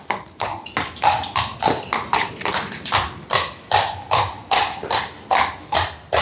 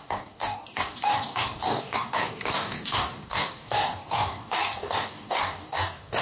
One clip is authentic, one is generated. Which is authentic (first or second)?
first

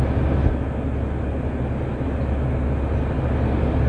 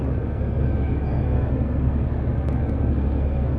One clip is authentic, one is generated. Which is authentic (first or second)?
first